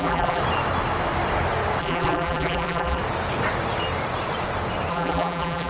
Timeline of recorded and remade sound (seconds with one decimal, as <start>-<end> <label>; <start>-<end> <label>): 0.0-0.4 remade; 0.4-1.8 recorded; 1.8-3.0 remade; 3.0-4.9 recorded; 4.9-5.7 remade

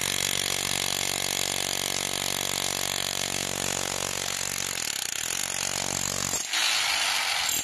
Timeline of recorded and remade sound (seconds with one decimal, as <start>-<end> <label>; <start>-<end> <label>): 0.0-7.6 recorded

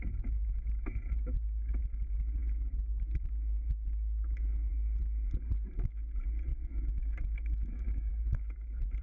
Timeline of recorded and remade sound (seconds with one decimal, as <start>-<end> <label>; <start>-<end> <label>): 0.0-0.4 recorded; 0.4-1.8 remade; 1.8-6.5 recorded; 6.5-8.1 remade; 8.1-9.0 recorded

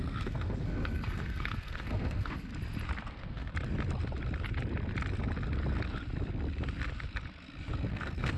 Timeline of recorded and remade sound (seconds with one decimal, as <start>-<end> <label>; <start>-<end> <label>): 0.0-2.5 remade; 2.5-3.1 recorded; 3.1-3.5 remade; 3.5-7.9 recorded; 7.9-8.4 remade

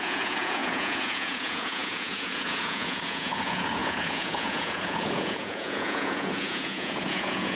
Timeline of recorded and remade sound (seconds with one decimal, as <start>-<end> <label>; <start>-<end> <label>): 0.0-7.6 remade